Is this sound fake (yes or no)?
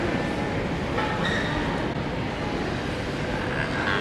no